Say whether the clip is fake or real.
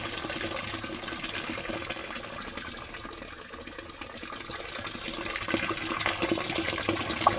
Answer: real